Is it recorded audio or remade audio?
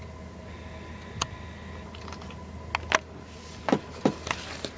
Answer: recorded